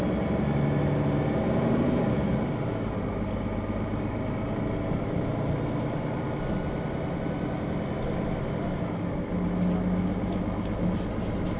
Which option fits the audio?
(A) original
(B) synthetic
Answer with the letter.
A